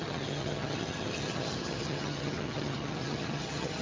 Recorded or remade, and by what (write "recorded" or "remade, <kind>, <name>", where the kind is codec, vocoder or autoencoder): remade, vocoder, HiFi-GAN